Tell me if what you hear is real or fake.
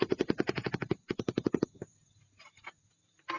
fake